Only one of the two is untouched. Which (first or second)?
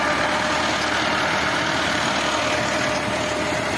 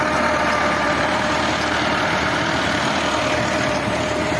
first